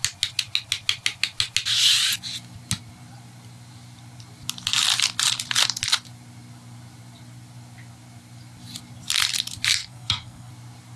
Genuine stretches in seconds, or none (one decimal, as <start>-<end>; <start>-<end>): 0.0-9.8; 10.5-11.0